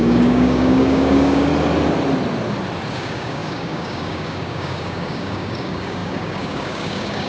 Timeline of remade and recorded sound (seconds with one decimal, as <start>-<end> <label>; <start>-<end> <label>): 0.0-1.5 remade; 1.5-2.9 recorded; 2.9-7.3 remade